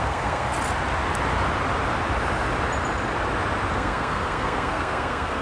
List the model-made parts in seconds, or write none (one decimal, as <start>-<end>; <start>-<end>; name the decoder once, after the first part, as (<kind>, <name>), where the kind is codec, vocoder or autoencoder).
0.0-0.5 (codec, SNAC); 3.7-5.4